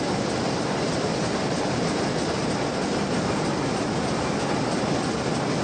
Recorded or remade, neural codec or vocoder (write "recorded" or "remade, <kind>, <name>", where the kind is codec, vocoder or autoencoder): recorded